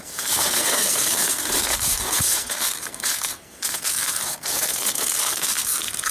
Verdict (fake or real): fake